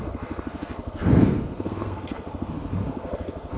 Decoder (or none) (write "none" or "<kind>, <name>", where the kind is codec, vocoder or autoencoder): codec, SNAC